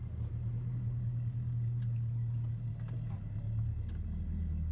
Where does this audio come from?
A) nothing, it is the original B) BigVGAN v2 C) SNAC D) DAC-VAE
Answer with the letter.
A